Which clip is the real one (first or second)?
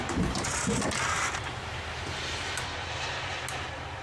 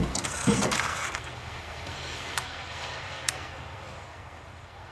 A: first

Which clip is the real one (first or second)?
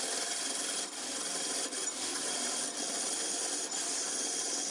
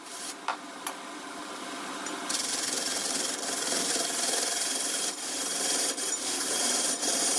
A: first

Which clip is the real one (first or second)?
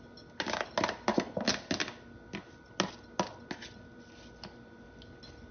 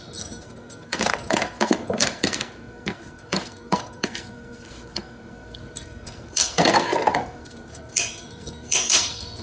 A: first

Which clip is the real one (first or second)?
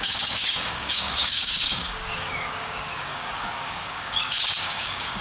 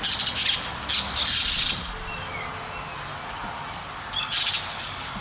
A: second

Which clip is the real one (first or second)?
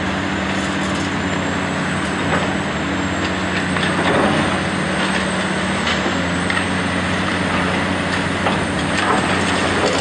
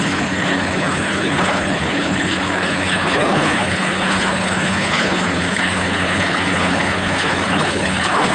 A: first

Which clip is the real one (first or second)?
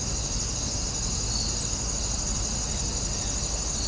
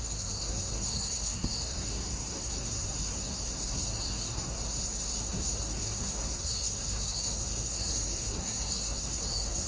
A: first